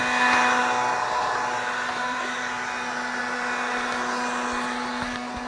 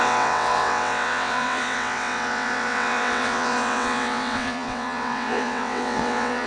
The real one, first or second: first